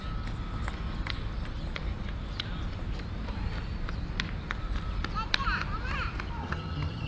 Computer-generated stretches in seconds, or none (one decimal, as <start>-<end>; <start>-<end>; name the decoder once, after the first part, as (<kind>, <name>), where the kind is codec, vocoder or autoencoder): 6.4-7.1 (vocoder, HiFi-GAN)